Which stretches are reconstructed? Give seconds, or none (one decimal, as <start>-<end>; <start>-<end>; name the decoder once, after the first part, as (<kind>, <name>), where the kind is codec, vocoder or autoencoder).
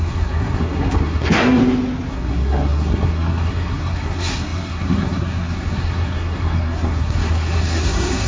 0.0-1.6 (codec, SNAC); 2.1-8.3